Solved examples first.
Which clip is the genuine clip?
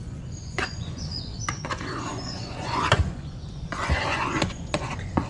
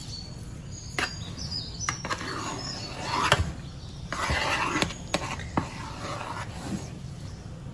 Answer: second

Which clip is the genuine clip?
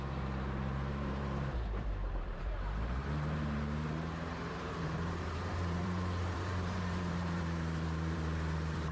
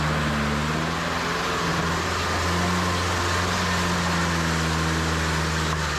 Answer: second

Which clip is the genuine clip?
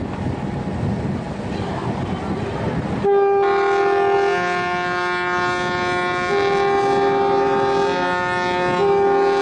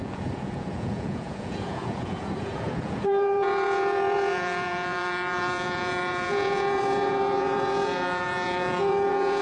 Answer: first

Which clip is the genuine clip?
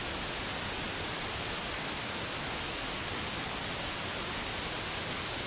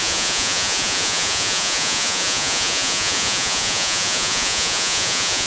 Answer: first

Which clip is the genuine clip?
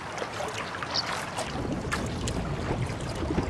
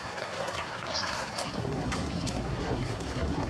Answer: first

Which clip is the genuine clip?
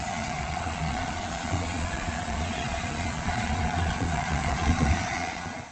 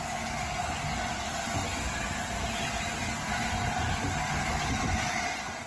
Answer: second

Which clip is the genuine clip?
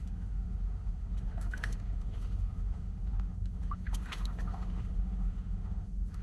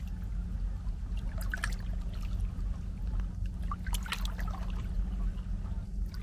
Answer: second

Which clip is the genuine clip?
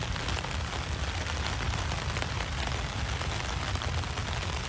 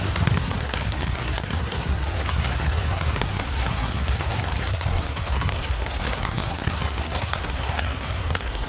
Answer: first